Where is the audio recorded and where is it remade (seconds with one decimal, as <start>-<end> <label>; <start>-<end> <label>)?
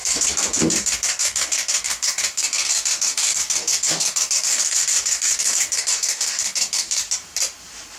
0.0-7.0 remade; 7.0-8.0 recorded